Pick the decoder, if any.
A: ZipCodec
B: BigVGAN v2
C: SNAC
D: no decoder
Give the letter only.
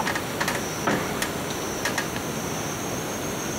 D